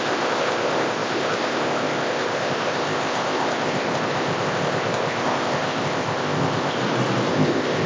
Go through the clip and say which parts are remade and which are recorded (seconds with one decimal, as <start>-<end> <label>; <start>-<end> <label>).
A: 0.0-6.8 remade; 6.8-7.3 recorded; 7.3-7.9 remade